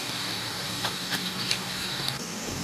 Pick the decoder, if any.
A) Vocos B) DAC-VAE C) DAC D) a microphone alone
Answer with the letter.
C